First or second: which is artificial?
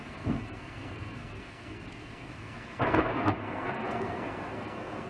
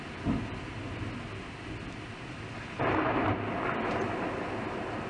first